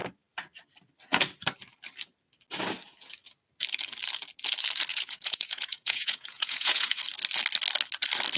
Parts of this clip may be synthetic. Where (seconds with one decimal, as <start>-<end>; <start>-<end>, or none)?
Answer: 4.9-7.0